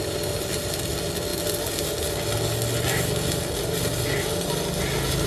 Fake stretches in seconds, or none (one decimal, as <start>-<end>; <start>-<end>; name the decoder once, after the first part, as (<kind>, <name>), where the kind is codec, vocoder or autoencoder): none